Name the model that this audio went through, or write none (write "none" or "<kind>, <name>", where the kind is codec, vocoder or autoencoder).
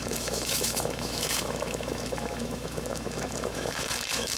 autoencoder, DAC-VAE